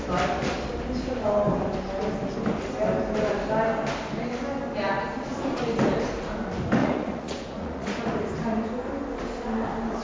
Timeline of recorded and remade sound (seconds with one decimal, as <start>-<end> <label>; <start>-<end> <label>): 0.0-6.8 recorded; 6.8-8.0 remade; 8.0-10.0 recorded

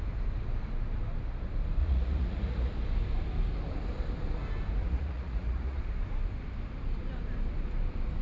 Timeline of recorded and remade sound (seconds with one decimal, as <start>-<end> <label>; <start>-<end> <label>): 0.0-1.8 recorded; 1.8-2.7 remade; 2.7-4.8 recorded; 4.8-5.8 remade; 5.8-8.2 recorded

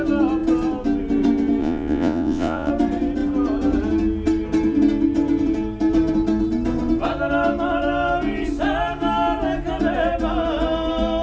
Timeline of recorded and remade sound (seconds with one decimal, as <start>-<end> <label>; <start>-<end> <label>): 0.0-1.6 recorded; 1.6-2.7 remade; 2.7-11.2 recorded

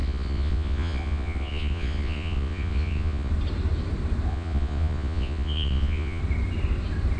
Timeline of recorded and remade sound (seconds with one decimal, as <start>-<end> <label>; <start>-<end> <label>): 0.0-3.3 remade; 3.3-4.3 recorded; 4.3-6.2 remade; 6.2-7.2 recorded

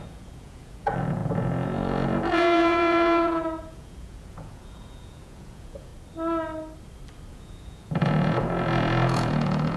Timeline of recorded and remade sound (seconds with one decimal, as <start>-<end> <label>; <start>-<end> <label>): 0.0-5.9 remade; 5.9-7.3 recorded; 7.3-9.8 remade